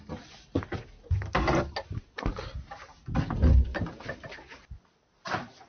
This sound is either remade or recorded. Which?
recorded